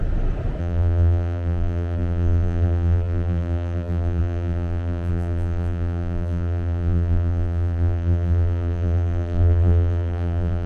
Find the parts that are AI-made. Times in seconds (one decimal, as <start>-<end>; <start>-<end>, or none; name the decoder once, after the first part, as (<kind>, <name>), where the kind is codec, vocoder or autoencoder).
0.6-10.7 (vocoder, BigVGAN v2)